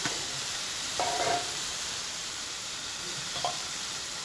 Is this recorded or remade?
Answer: remade